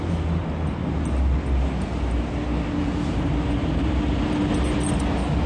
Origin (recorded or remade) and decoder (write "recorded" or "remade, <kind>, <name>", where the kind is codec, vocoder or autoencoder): recorded